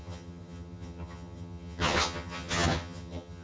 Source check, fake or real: fake